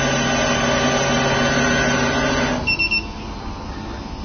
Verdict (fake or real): real